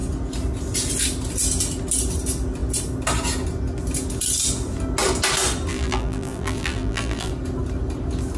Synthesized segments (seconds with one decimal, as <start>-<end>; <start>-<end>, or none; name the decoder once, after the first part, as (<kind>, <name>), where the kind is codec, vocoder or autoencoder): 5.7-7.3 (vocoder, BigVGAN v2)